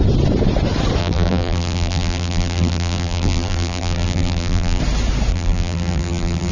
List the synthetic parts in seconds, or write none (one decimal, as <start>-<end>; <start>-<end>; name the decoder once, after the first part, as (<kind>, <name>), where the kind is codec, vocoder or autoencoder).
1.0-4.8 (vocoder, BigVGAN v2); 5.3-6.5